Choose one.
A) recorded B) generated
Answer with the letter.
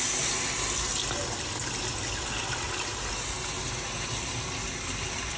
A